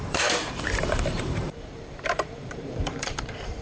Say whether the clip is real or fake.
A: fake